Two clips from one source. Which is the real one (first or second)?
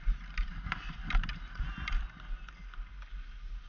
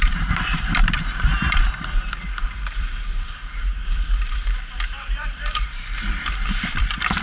first